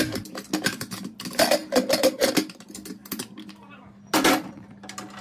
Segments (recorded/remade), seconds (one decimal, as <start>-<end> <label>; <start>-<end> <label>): 0.0-5.2 recorded